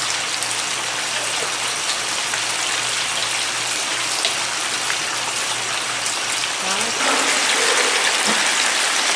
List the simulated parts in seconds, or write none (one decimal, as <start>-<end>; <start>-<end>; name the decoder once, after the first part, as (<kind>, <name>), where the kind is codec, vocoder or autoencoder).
none